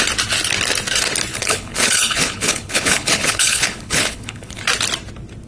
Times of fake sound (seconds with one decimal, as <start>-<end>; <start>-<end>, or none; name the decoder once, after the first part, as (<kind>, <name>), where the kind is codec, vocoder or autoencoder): 1.3-4.6 (codec, HILCodec)